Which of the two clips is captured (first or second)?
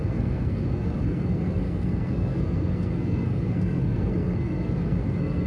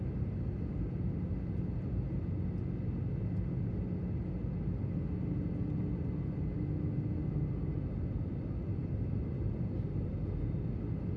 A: second